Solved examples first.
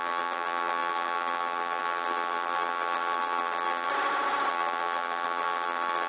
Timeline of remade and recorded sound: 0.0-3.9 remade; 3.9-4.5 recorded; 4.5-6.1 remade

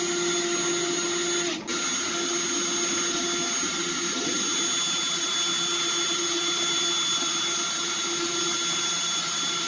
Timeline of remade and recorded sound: 0.0-9.7 recorded

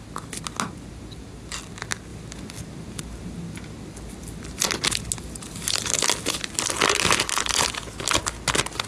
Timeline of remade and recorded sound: 0.0-8.9 recorded

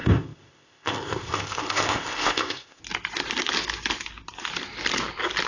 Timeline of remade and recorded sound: 0.0-2.8 remade; 2.8-5.5 recorded

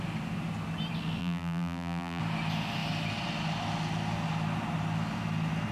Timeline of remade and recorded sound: 0.0-1.2 recorded; 1.2-2.2 remade; 2.2-5.7 recorded

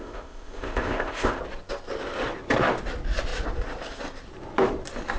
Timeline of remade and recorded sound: 0.0-1.4 remade; 1.4-5.2 recorded

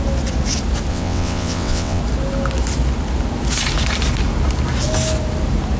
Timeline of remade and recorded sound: 0.0-0.9 recorded; 0.9-2.0 remade; 2.0-5.8 recorded